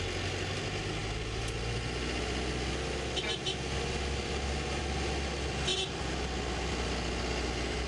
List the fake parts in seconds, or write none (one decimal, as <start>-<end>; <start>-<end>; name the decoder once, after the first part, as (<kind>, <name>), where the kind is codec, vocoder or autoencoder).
none